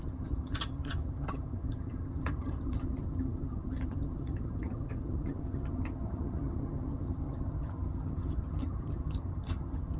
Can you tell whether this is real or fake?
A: fake